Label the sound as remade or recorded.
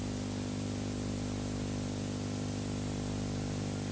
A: recorded